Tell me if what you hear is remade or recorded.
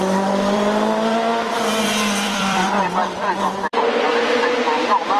remade